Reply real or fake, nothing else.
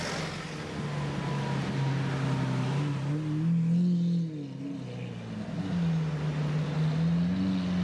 real